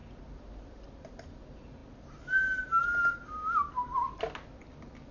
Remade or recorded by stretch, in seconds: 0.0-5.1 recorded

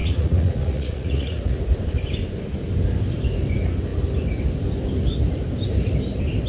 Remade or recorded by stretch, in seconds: 0.0-1.6 remade; 1.6-6.5 recorded

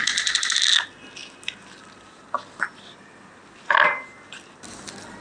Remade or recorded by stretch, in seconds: 0.0-5.2 recorded

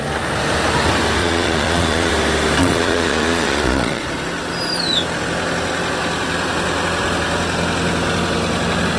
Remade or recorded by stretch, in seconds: 0.0-1.2 recorded; 1.2-2.1 remade; 2.1-2.6 recorded; 2.6-4.0 remade; 4.0-9.0 recorded

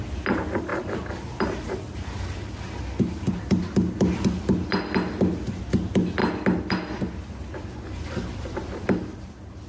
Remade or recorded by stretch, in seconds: 0.0-9.7 recorded